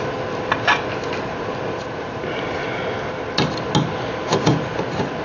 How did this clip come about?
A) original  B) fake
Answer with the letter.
A